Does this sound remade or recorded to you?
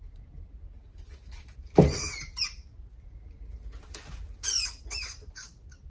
recorded